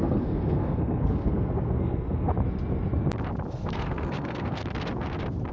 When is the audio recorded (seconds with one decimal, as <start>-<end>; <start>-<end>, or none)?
2.3-3.5; 4.6-5.5